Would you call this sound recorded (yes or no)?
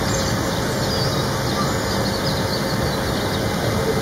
yes